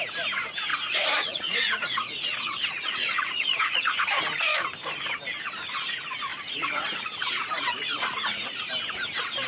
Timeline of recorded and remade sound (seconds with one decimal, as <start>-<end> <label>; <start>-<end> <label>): 0.0-0.7 recorded; 0.7-4.2 remade; 4.2-6.3 recorded; 6.3-8.7 remade; 8.7-9.5 recorded